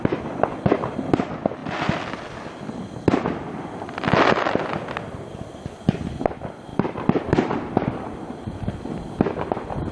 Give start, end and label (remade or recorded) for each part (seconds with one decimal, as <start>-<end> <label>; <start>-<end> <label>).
0.0-6.7 recorded; 6.7-8.6 remade; 8.6-9.9 recorded